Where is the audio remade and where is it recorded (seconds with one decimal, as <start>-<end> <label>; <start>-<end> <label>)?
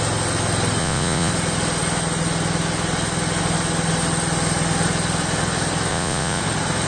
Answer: 0.0-0.8 recorded; 0.8-1.3 remade; 1.3-5.9 recorded; 5.9-6.4 remade; 6.4-6.9 recorded